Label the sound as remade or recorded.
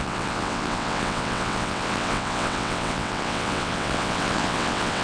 remade